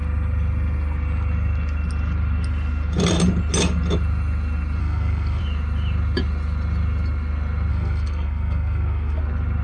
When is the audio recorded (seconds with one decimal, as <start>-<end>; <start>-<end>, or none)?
0.0-4.8; 5.4-7.7; 9.2-9.6